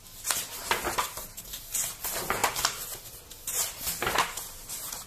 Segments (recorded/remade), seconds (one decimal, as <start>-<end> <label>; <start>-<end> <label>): 0.0-5.1 recorded